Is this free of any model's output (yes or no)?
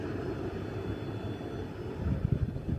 yes